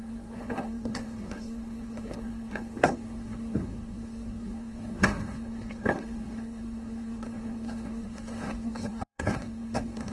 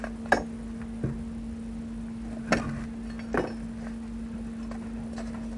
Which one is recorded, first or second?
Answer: second